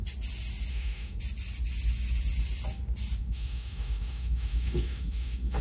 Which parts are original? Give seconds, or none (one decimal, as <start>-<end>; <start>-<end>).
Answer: 0.0-0.7; 1.2-3.2